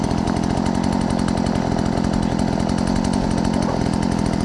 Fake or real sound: real